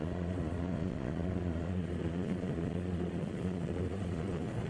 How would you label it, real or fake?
fake